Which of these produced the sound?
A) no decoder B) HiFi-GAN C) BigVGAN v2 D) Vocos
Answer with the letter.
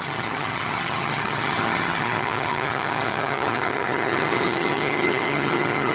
B